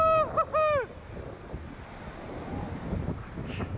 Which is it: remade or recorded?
recorded